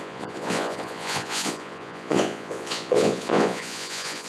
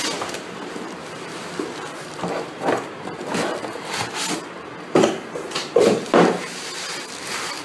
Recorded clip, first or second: second